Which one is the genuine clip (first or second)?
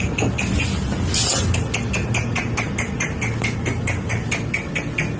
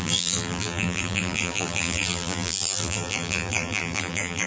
first